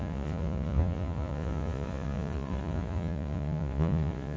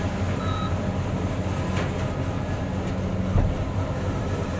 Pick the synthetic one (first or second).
first